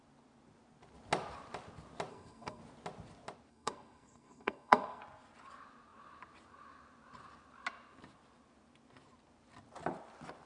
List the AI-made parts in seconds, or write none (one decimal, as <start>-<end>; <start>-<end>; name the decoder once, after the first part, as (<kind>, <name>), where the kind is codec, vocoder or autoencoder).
2.1-2.6 (codec, SNAC); 3.5-5.0